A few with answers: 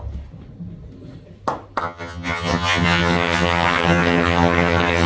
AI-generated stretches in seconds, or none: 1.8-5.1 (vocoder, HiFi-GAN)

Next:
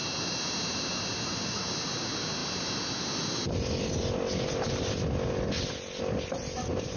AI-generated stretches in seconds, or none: none

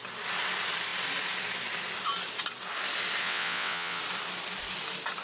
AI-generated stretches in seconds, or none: 3.2-4.0 (vocoder, WaveNeXt)

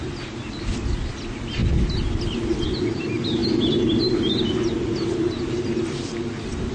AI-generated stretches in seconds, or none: none

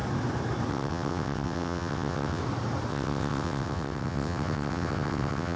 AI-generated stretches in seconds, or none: 0.7-2.4 (vocoder, WaveNeXt); 2.9-5.6

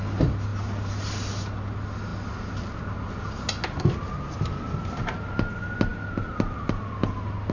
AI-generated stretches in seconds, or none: none

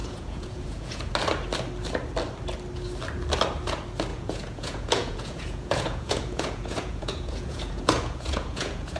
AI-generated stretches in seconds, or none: 0.0-1.1 (vocoder, Vocos); 4.1-9.0